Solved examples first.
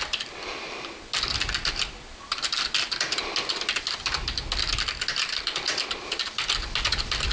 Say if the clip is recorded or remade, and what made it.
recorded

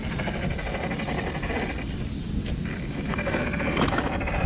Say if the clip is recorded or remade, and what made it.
recorded